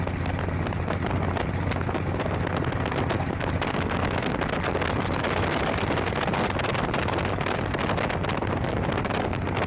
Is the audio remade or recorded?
recorded